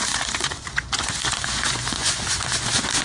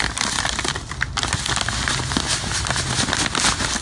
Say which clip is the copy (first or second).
first